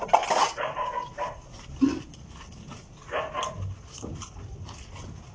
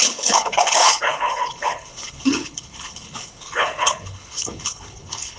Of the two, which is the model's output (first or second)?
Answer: second